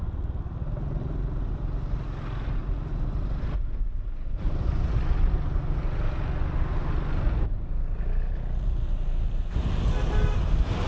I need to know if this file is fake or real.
real